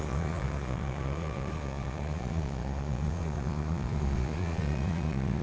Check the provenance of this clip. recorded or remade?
remade